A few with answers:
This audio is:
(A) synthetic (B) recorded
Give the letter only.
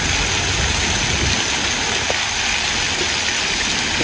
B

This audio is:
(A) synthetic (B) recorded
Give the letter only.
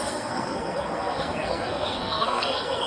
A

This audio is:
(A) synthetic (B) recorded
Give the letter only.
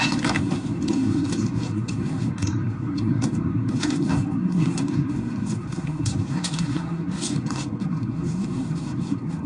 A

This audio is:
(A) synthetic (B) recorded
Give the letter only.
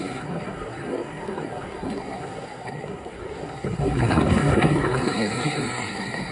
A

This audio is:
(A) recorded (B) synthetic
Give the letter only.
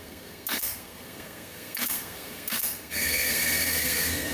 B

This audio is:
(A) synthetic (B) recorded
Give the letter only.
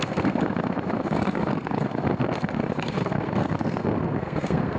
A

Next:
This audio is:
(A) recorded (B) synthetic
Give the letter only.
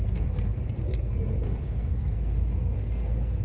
B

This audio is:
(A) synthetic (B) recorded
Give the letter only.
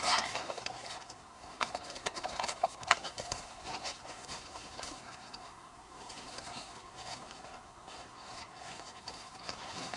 A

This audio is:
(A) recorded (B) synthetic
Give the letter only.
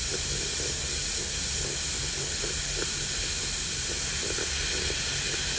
A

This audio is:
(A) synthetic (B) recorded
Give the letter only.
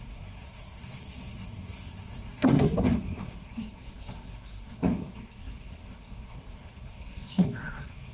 A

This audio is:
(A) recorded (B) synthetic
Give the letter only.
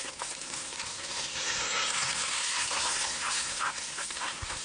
B